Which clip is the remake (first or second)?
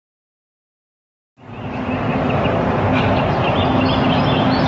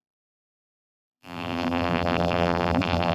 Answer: second